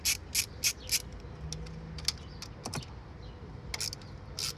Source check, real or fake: real